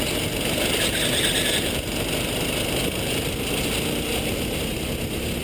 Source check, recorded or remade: recorded